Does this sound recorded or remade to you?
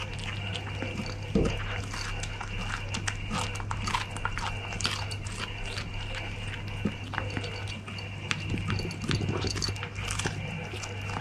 recorded